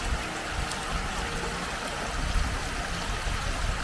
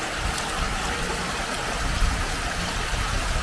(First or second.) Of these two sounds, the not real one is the second